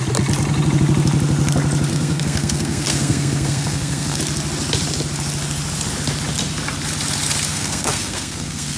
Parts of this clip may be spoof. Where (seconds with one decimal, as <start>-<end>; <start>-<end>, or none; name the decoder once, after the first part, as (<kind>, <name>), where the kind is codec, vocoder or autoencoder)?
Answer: 1.9-4.2 (codec, SNAC); 7.5-8.8